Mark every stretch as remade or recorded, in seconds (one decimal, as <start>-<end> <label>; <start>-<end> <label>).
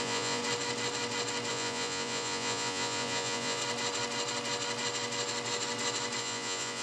0.0-0.4 remade; 0.4-1.5 recorded; 1.5-3.6 remade; 3.6-6.2 recorded; 6.2-6.8 remade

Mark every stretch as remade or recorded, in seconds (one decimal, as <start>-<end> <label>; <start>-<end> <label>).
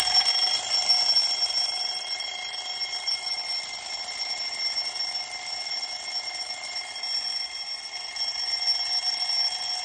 0.0-9.8 recorded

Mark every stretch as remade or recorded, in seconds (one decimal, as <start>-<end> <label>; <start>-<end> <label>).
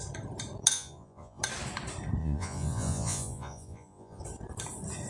0.0-0.7 recorded; 0.7-1.4 remade; 1.4-2.2 recorded; 2.2-4.2 remade; 4.2-5.1 recorded